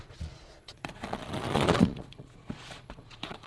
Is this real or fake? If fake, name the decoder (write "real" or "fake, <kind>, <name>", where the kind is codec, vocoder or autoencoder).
fake, vocoder, Vocos